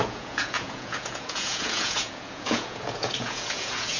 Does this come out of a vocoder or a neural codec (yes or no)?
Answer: yes